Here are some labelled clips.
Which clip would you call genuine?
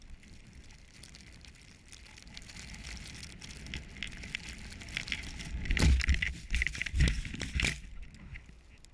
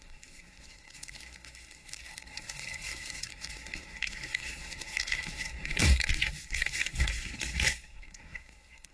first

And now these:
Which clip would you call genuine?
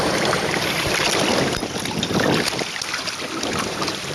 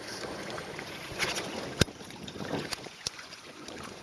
first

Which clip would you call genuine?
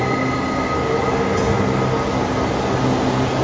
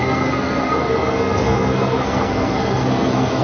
first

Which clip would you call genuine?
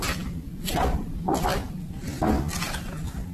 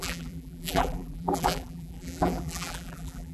first